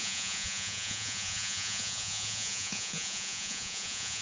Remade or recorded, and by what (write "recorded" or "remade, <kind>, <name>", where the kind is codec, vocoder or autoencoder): remade, vocoder, Vocos